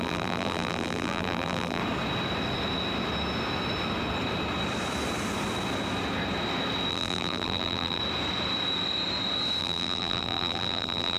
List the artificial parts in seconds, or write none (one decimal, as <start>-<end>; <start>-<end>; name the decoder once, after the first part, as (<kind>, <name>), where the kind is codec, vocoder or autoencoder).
0.0-1.8 (vocoder, BigVGAN v2); 6.9-8.0; 9.6-11.2